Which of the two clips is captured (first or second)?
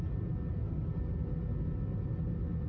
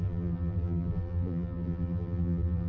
first